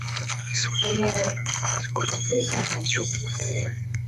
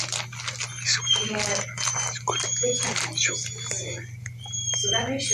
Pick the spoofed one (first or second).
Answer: first